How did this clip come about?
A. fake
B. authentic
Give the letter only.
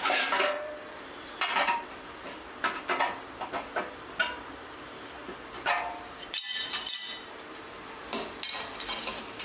A